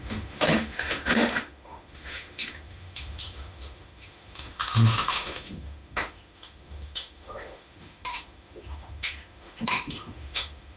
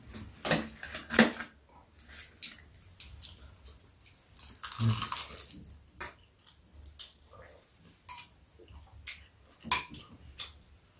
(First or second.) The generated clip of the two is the first